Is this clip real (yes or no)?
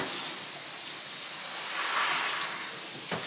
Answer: yes